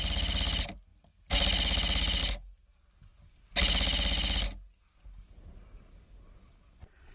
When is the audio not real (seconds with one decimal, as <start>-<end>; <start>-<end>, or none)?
none